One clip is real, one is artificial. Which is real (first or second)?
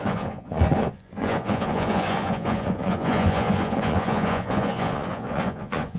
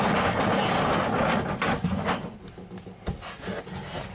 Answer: second